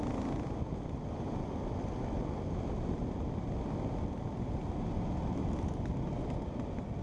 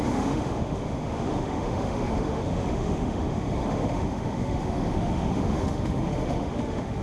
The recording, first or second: first